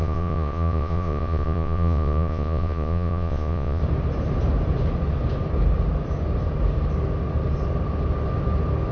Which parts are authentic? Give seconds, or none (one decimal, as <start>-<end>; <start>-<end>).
3.8-8.9